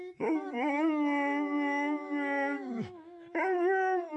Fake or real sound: fake